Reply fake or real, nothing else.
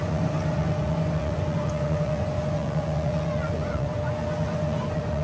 fake